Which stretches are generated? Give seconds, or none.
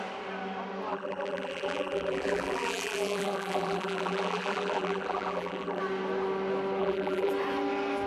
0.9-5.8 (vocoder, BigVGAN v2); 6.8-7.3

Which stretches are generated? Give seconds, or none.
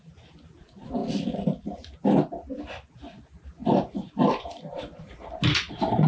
3.6-5.3 (vocoder, BigVGAN v2)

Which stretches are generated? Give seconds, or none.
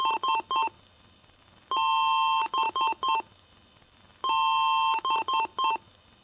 none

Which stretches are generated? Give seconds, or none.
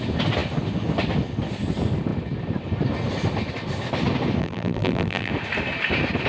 4.4-5.3 (vocoder, BigVGAN v2)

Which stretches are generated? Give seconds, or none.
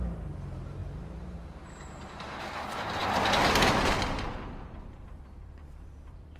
0.0-3.0 (vocoder, BigVGAN v2); 3.7-6.4